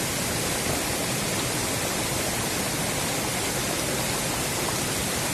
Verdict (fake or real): real